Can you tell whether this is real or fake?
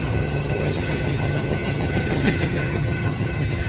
fake